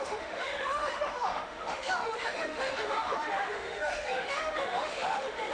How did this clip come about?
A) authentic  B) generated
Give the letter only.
B